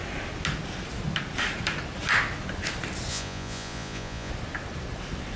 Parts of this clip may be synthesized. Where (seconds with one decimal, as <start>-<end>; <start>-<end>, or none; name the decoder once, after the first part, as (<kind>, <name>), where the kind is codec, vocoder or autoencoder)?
3.1-4.3 (vocoder, Vocos)